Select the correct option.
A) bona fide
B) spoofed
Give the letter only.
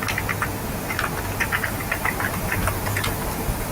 A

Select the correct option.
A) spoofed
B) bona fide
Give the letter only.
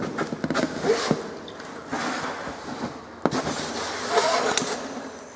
B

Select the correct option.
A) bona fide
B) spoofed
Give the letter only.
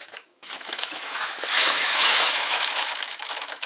B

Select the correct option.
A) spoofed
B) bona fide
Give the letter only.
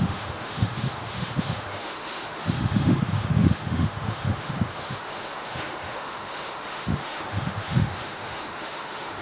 A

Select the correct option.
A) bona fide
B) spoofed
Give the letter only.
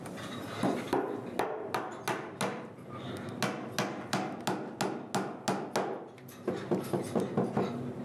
A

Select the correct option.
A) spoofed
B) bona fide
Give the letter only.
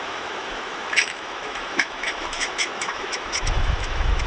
A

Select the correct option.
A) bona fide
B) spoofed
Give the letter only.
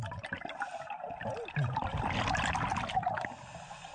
A